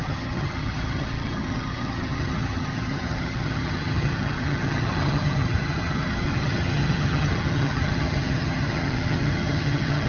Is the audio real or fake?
fake